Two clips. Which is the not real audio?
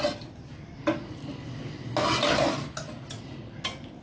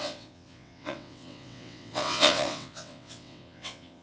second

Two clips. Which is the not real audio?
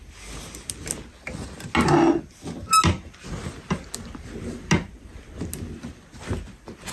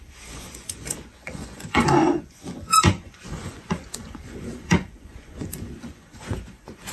second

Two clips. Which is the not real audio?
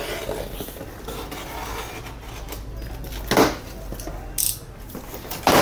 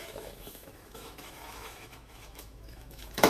second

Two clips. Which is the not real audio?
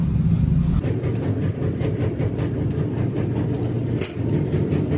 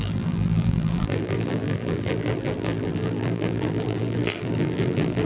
second